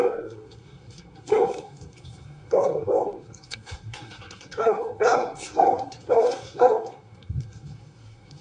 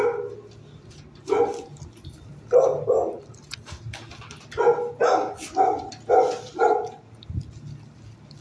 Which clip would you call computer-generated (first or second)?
first